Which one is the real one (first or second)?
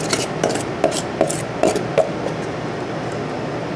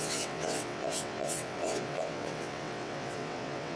first